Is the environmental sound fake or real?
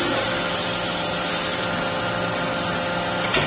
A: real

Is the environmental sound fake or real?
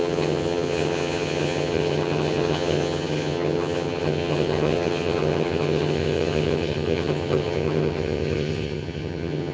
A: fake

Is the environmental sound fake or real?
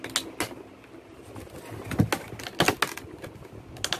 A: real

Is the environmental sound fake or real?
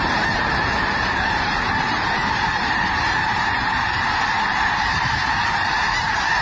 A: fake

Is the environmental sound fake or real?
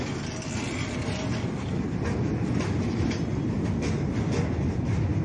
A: real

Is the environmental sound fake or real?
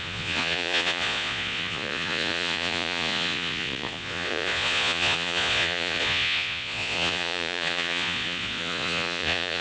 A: fake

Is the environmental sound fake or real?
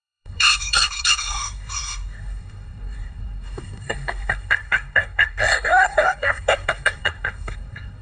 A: fake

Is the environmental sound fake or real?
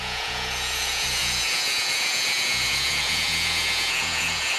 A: fake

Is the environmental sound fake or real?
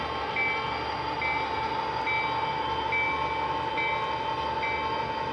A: real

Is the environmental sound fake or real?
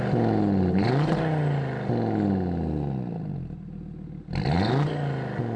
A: real